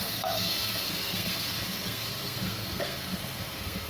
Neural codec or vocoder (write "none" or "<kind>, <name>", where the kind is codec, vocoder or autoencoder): codec, SNAC